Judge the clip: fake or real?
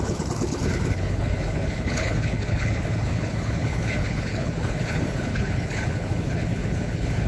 fake